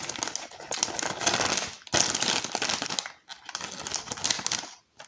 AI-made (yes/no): no